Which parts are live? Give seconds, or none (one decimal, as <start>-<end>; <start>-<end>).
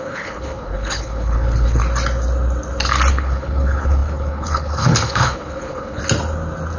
1.8-3.1; 6.0-6.8